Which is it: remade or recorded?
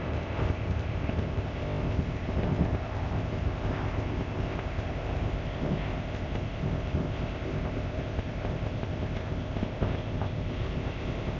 remade